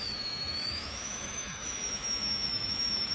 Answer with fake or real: fake